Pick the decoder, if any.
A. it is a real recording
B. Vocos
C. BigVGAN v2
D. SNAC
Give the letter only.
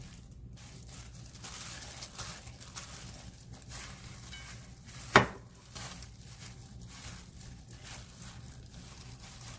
A